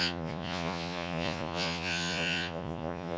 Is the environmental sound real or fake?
fake